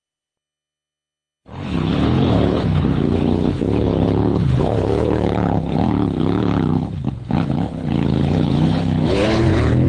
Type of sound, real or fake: fake